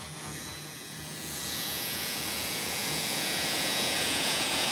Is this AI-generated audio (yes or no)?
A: yes